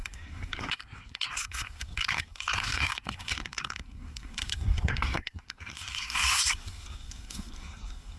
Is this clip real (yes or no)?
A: no